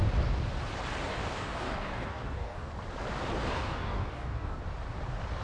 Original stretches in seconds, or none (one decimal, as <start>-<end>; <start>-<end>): 0.0-1.1; 2.7-3.5; 4.6-5.4